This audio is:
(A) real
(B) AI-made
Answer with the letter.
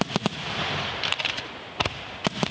A